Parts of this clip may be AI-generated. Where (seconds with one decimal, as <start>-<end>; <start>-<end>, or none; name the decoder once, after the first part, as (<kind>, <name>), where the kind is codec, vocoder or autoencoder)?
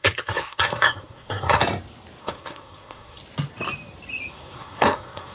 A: 0.0-1.6 (codec, SNAC); 2.2-3.2; 4.3-5.3